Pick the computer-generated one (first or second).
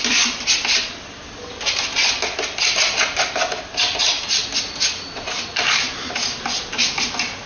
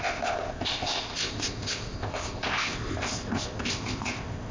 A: second